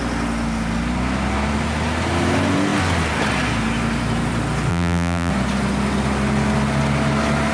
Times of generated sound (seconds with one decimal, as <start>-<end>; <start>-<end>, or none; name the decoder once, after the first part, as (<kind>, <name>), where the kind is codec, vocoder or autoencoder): 4.7-5.3 (vocoder, BigVGAN v2)